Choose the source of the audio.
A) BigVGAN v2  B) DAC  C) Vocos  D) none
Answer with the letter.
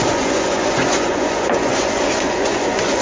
C